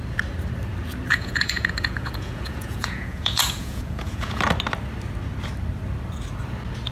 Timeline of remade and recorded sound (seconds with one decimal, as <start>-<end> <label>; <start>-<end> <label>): 0.0-1.1 recorded; 1.1-4.4 remade; 4.4-6.9 recorded